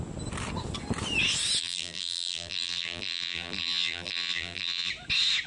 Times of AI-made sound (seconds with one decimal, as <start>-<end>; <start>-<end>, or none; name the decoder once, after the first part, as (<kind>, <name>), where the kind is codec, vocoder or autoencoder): 1.6-4.9 (vocoder, BigVGAN v2)